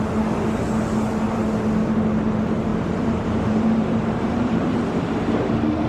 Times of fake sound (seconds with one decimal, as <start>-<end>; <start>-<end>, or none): 2.7-5.0